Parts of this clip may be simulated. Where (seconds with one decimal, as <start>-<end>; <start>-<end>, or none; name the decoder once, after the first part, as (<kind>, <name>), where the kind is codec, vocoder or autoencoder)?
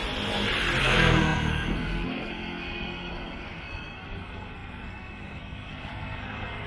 0.8-6.7 (codec, SNAC)